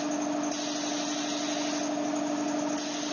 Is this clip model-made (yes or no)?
no